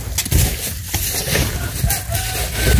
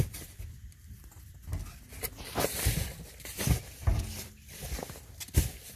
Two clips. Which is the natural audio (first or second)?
first